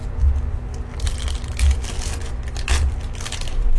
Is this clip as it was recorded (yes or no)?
yes